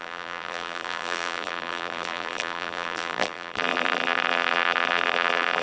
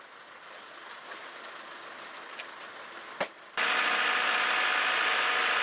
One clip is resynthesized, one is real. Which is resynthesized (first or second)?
first